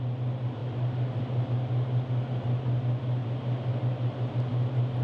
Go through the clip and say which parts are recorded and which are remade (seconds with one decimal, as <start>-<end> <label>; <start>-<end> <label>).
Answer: 0.0-3.2 remade; 3.2-4.0 recorded; 4.0-5.0 remade